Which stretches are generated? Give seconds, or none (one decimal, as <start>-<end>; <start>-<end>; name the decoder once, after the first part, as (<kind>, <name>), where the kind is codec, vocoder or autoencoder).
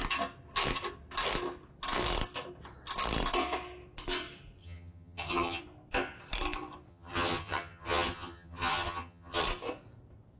4.6-5.6 (vocoder, HiFi-GAN); 6.9-9.4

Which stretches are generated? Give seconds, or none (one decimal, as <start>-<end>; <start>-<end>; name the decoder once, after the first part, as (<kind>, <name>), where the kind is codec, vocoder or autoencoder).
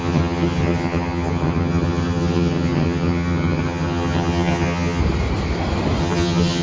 0.0-5.0 (vocoder, HiFi-GAN); 6.0-6.6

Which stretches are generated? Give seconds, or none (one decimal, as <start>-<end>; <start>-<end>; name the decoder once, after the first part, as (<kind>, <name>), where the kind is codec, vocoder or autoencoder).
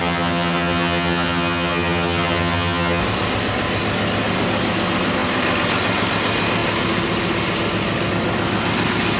0.0-3.0 (vocoder, HiFi-GAN)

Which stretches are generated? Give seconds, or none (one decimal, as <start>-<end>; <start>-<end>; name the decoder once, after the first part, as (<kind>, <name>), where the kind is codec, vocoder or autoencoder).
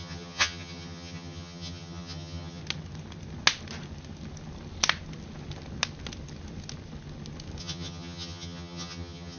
0.0-2.6 (vocoder, HiFi-GAN); 7.6-9.4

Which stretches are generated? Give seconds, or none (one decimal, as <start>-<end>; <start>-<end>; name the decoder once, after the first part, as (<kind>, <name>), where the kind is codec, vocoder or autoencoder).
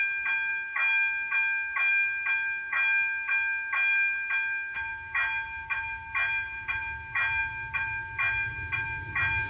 none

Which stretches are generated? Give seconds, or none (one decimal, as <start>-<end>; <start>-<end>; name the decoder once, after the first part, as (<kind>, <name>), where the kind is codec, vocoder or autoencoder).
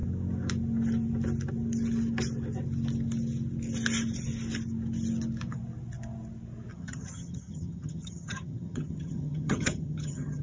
6.7-10.4 (vocoder, HiFi-GAN)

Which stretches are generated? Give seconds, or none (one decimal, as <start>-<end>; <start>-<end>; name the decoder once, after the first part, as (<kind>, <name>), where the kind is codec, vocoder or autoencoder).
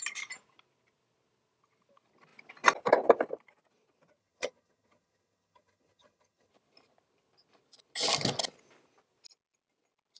4.2-6.5 (vocoder, HiFi-GAN)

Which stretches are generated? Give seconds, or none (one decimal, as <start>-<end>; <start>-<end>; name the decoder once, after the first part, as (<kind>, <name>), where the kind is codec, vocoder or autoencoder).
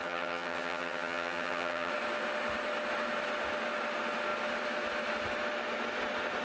0.0-1.9 (vocoder, HiFi-GAN)